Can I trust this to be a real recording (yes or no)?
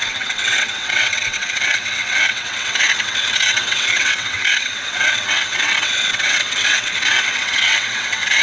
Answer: no